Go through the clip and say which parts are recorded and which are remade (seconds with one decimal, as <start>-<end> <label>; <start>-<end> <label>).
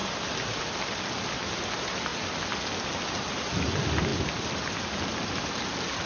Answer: 0.0-6.1 recorded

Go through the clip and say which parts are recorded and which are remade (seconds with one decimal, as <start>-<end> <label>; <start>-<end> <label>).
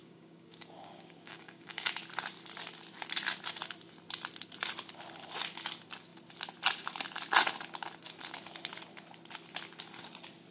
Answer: 0.0-1.9 remade; 1.9-10.5 recorded